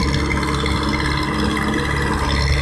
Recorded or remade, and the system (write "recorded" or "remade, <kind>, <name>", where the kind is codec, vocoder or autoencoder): recorded